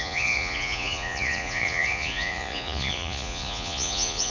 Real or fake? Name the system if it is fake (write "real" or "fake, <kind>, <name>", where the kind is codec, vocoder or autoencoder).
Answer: fake, vocoder, Vocos